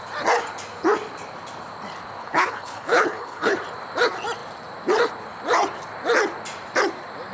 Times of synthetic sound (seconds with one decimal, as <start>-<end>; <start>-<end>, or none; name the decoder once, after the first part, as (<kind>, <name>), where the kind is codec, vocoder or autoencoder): 2.2-3.5 (codec, HILCodec)